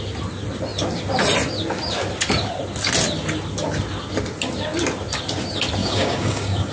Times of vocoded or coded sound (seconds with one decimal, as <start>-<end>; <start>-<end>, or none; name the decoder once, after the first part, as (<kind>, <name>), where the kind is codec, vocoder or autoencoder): 5.8-6.7 (codec, DAC)